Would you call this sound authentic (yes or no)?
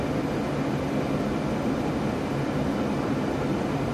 yes